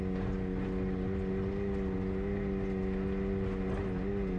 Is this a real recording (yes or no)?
yes